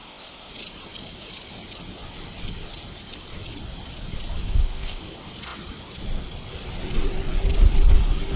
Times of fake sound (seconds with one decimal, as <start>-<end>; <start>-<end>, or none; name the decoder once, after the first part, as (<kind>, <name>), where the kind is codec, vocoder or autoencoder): 0.0-0.5 (codec, ZipCodec); 4.5-5.0